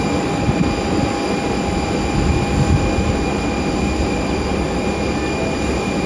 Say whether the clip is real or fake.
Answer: real